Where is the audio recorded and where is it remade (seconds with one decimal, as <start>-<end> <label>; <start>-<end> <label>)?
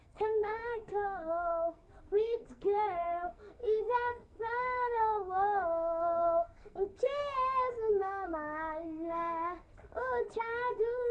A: 0.0-7.2 remade; 7.2-7.9 recorded; 7.9-11.1 remade